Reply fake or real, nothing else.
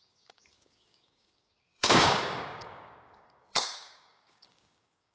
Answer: fake